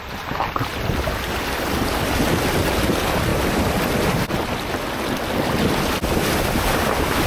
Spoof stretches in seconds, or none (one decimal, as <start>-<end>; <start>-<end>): none